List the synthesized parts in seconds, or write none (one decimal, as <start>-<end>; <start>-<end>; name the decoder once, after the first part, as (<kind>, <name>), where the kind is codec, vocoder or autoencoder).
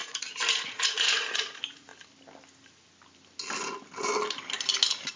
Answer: 0.0-1.9 (vocoder, Vocos)